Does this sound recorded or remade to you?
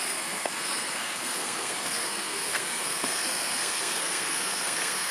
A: remade